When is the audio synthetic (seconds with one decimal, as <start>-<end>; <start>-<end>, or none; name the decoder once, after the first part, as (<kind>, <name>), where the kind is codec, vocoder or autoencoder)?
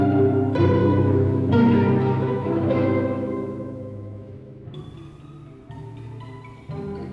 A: 0.8-4.8 (autoencoder, DAC-VAE)